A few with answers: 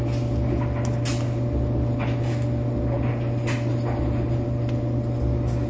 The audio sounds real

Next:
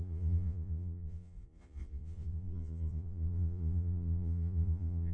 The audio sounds fake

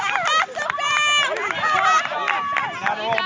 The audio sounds real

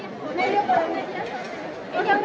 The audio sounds real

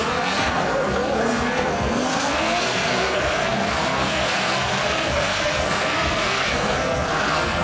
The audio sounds fake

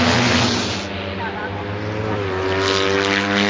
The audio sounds real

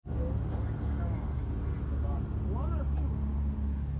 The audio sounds real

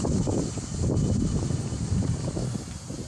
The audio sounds real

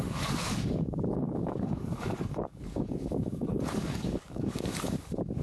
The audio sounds fake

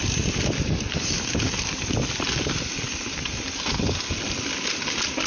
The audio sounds real